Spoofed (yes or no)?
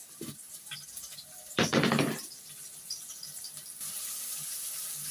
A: yes